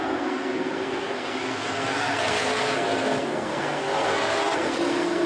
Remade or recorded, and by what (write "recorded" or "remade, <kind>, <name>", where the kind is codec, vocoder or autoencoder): remade, codec, SNAC